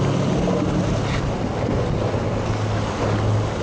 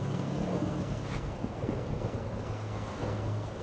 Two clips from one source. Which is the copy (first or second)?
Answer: second